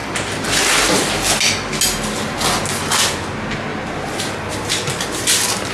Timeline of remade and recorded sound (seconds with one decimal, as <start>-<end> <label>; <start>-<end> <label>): 0.0-5.7 recorded